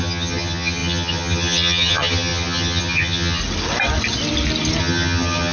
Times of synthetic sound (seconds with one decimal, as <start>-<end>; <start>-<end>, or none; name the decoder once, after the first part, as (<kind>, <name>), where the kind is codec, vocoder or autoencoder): 0.0-3.4 (vocoder, HiFi-GAN); 4.8-5.5